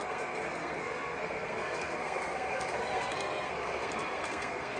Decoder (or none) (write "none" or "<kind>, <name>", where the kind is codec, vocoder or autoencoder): codec, SNAC